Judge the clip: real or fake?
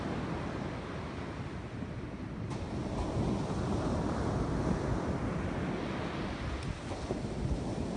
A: real